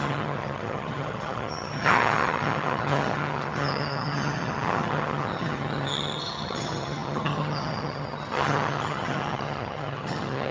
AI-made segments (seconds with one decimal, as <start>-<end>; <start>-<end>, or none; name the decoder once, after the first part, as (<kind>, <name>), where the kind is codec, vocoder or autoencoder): 0.0-10.5 (vocoder, HiFi-GAN)